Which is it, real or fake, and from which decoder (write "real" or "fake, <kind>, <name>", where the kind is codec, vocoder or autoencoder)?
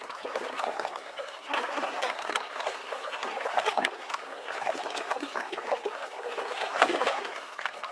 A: fake, codec, SNAC